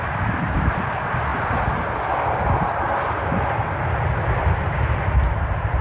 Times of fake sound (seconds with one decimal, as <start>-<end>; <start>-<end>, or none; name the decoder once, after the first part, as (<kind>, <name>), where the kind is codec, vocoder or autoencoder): 0.0-1.3 (vocoder, BigVGAN v2); 4.8-5.8